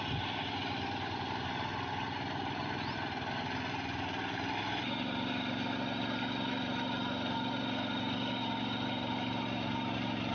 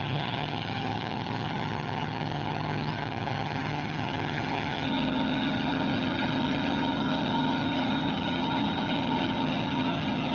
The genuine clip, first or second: first